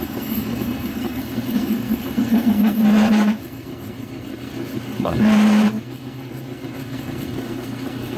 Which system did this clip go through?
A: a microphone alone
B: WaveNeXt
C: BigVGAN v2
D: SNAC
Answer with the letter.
D